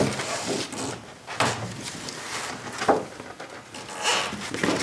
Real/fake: real